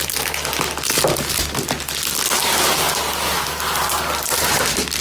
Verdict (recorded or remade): recorded